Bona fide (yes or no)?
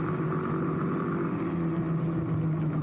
yes